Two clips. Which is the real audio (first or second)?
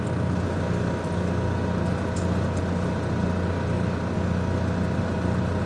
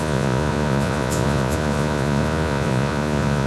first